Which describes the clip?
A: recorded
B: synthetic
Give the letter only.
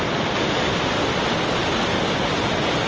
A